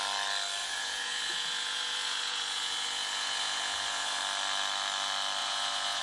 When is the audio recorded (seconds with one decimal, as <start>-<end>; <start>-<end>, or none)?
0.0-0.6; 4.2-5.4

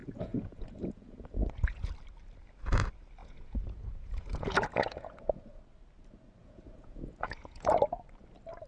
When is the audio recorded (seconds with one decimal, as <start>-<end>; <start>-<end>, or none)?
1.9-3.2; 5.6-6.4; 7.8-8.7

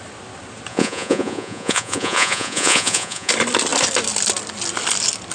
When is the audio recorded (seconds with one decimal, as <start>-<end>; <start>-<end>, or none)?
0.0-0.7; 3.3-5.3

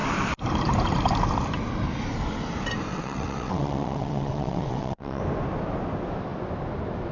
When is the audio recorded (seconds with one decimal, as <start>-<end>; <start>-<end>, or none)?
0.0-2.9; 5.2-7.1

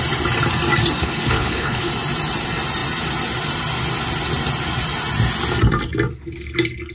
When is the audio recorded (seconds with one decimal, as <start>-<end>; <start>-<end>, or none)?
0.0-1.0; 1.9-6.9

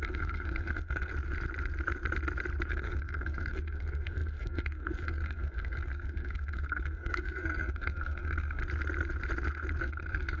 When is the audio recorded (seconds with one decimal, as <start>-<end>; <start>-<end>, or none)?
1.1-2.7; 8.6-9.8

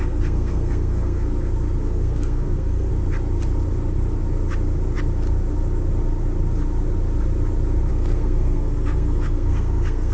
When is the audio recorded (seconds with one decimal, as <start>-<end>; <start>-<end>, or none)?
1.3-1.8; 2.9-7.9

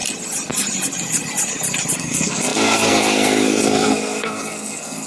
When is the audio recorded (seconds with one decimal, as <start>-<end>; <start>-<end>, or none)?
0.0-2.0